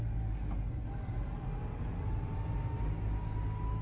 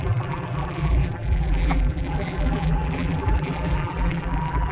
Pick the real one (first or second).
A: first